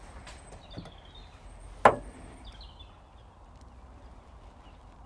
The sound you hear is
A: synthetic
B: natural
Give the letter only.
B